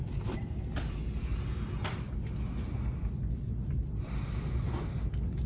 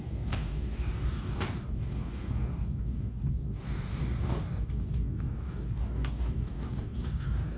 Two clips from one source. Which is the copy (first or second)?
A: second